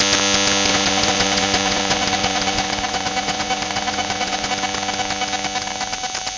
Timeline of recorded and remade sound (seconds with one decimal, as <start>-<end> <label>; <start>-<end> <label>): 0.0-0.7 recorded; 0.7-4.5 remade; 4.5-6.4 recorded